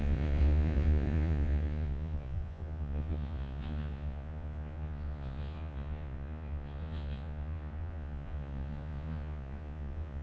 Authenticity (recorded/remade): remade